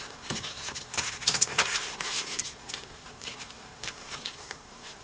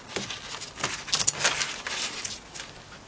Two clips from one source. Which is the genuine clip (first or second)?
second